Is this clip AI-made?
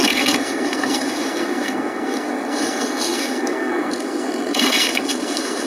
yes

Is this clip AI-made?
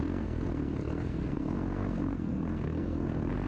yes